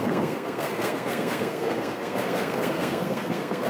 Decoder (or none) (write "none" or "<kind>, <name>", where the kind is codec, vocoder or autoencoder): codec, SNAC